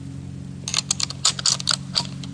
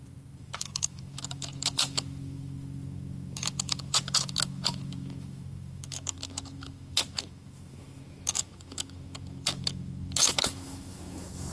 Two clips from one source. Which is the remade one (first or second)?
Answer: second